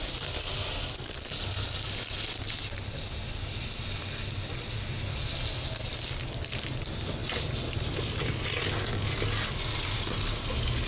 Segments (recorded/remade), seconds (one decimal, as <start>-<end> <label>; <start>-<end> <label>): 0.0-10.9 recorded